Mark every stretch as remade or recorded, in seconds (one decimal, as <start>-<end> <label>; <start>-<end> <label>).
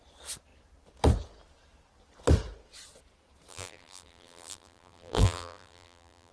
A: 0.0-3.5 recorded; 3.5-6.3 remade